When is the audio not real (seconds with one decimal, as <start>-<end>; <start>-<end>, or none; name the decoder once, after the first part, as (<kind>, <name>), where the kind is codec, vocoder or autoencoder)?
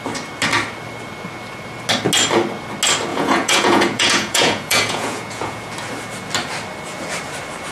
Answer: 3.1-5.7 (vocoder, Vocos)